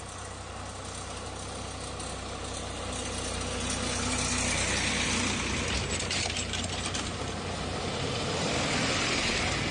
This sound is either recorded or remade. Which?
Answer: recorded